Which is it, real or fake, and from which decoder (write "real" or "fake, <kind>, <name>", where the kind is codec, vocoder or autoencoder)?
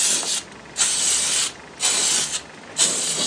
real